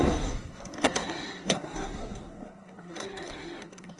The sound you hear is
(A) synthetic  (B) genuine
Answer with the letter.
A